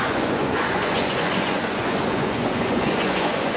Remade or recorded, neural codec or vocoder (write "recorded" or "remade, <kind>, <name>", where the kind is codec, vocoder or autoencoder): remade, vocoder, Vocos